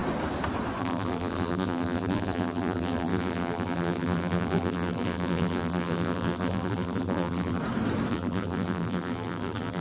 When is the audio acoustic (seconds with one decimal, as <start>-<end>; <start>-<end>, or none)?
0.0-0.8; 7.6-8.1